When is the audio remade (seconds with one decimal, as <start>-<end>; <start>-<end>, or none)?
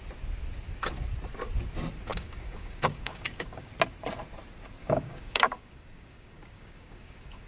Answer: 2.1-3.7; 4.8-7.5